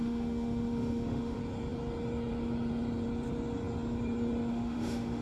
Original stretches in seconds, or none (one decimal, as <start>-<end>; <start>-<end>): 1.4-4.5